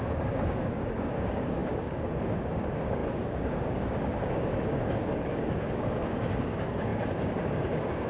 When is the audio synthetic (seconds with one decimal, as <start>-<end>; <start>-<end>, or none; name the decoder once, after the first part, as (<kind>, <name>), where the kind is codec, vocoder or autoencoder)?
0.0-8.1 (codec, DAC)